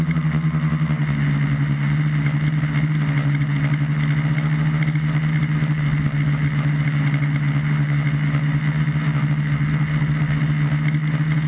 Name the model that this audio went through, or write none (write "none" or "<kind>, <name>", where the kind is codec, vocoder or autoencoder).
none